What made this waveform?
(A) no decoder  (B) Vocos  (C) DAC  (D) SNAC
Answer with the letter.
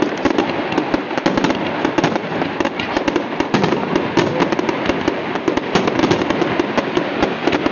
A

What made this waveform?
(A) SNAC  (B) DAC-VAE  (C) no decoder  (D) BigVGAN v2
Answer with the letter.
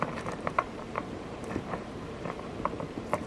D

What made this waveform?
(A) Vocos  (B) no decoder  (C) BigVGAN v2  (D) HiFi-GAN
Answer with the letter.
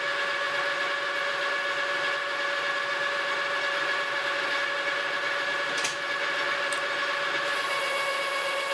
B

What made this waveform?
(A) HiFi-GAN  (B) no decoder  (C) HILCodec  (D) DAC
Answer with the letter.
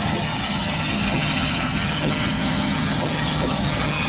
A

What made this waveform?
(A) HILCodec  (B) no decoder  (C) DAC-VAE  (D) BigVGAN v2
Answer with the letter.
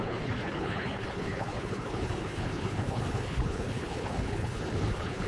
A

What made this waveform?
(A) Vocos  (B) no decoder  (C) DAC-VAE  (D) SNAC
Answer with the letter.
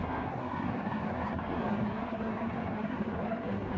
D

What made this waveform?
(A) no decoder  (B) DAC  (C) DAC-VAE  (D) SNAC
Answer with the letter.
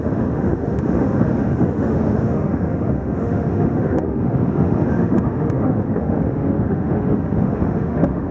C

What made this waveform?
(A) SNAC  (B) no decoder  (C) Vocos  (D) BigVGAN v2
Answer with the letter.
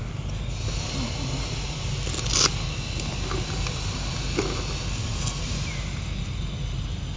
B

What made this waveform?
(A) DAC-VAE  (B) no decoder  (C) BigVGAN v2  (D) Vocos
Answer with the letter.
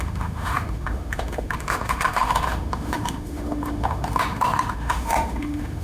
A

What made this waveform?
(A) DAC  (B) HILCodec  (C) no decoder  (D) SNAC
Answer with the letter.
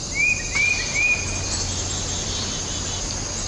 C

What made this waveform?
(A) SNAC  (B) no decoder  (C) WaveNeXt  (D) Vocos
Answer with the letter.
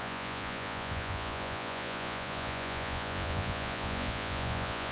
D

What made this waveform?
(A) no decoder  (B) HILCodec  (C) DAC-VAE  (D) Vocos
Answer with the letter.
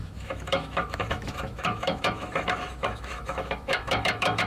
C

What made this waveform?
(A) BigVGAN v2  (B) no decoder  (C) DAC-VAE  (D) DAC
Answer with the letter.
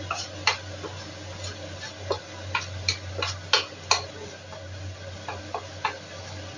B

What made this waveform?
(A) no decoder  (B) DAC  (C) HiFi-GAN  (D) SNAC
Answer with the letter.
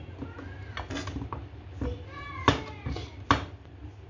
A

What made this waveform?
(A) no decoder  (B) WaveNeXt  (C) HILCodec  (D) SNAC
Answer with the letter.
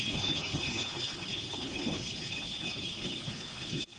C